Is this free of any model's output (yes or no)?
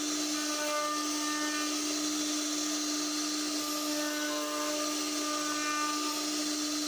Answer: yes